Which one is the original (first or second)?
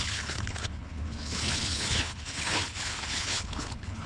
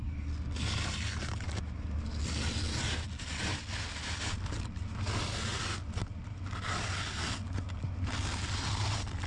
second